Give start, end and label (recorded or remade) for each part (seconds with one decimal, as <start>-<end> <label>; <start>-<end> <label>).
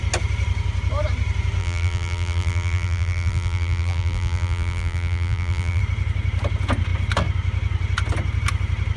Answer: 0.0-1.6 recorded; 1.6-5.8 remade; 5.8-9.0 recorded